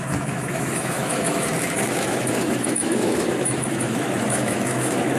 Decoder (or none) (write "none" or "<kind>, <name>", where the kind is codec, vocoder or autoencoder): autoencoder, DAC-VAE